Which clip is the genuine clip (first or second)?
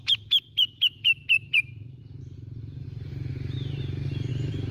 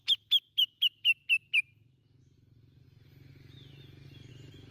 second